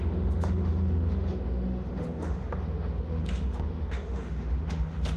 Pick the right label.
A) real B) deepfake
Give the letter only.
B